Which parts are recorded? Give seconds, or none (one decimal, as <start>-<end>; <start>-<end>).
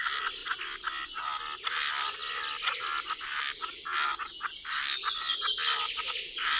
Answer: 0.0-6.6